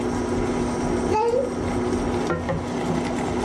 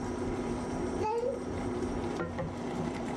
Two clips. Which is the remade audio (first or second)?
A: second